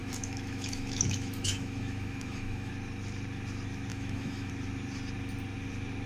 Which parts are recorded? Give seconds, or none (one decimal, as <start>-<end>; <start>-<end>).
2.7-3.9; 4.5-6.1